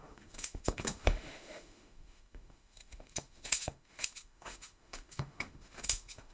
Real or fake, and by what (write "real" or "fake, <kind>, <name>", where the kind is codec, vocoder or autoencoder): fake, autoencoder, DAC-VAE